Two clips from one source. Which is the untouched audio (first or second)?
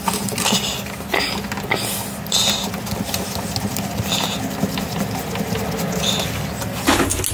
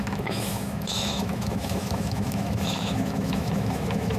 first